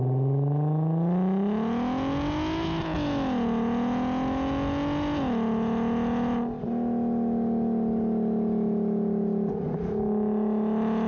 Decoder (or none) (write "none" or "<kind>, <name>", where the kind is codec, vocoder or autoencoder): none